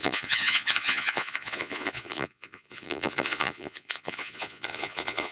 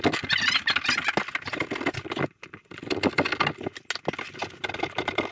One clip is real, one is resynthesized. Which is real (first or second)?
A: second